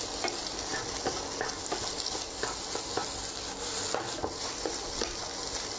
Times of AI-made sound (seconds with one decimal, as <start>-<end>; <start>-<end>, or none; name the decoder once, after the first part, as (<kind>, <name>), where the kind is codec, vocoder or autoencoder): none